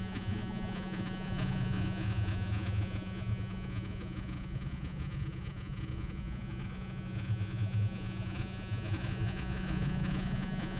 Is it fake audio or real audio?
fake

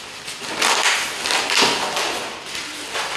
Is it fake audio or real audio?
real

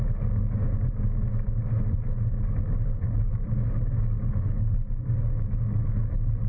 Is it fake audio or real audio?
real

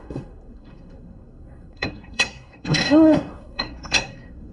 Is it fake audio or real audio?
fake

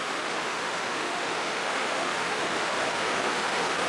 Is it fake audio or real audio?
fake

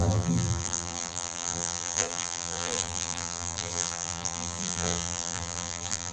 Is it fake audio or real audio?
fake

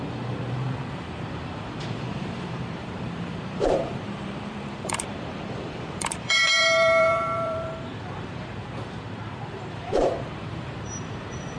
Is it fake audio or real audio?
fake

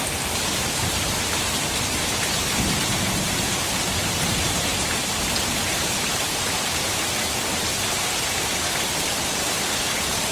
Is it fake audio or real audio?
fake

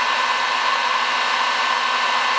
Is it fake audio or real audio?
real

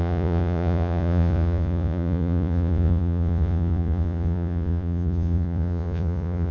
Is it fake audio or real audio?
fake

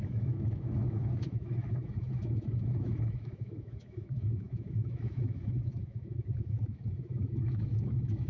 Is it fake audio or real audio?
fake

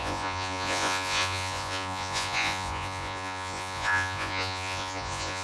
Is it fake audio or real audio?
fake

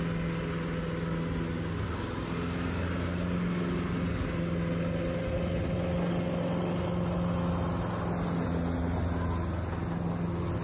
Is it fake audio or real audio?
real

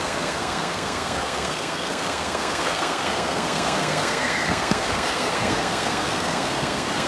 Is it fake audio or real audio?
fake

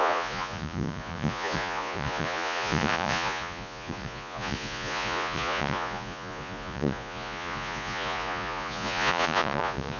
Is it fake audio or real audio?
fake